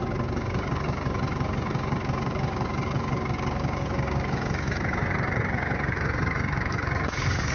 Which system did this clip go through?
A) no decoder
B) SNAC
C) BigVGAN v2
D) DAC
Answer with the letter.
D